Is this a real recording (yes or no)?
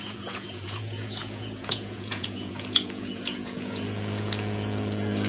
no